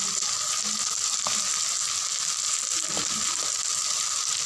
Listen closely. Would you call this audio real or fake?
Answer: real